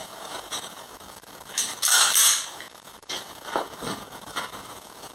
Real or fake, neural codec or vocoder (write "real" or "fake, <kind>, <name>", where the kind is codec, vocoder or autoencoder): fake, codec, DAC